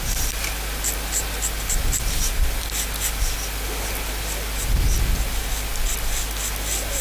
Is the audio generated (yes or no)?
no